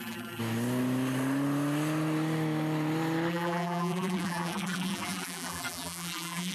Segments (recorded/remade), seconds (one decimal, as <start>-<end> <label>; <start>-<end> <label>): 0.0-0.4 remade; 0.4-3.3 recorded; 3.3-6.5 remade

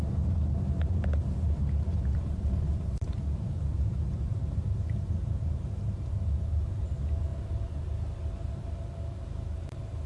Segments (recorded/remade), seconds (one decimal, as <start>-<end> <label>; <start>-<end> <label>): 0.0-7.3 remade; 7.3-8.5 recorded; 8.5-10.1 remade

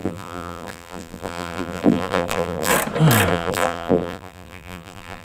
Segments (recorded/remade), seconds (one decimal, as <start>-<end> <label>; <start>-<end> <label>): 0.0-2.7 remade; 2.7-3.3 recorded; 3.3-5.2 remade